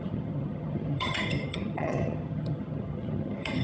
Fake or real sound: fake